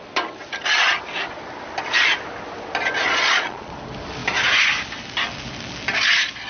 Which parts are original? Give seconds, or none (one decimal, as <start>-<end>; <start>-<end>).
0.0-3.0; 3.7-6.5

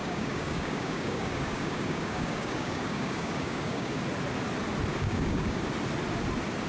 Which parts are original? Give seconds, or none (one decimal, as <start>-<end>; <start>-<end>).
4.0-4.9; 5.6-6.7

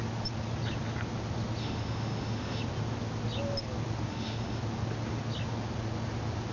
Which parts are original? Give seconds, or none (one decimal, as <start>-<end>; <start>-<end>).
0.0-1.6; 2.6-4.1; 4.6-6.5

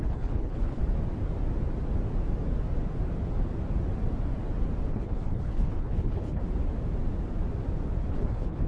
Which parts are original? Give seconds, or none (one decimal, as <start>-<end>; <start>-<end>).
0.8-4.9; 6.4-8.1

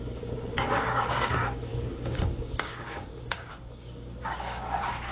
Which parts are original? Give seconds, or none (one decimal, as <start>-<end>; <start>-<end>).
none

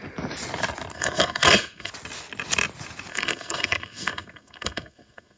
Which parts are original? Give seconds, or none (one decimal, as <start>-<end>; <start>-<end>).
0.0-0.9; 1.9-3.1

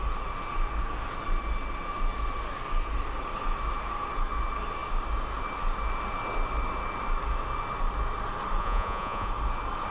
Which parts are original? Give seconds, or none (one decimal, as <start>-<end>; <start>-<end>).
0.0-8.6; 9.3-9.9

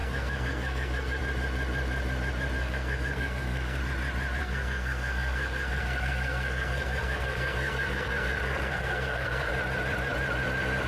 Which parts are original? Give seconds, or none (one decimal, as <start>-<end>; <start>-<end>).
1.2-2.6; 3.8-4.4; 9.5-10.9